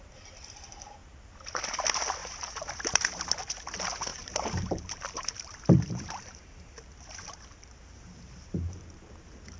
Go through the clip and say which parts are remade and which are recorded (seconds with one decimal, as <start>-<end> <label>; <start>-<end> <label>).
0.0-1.0 recorded; 1.0-1.6 remade; 1.6-2.2 recorded; 2.2-3.4 remade; 3.4-4.1 recorded; 4.1-9.0 remade; 9.0-9.6 recorded